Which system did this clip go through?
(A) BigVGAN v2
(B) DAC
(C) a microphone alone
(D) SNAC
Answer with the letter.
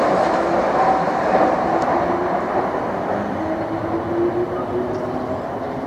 C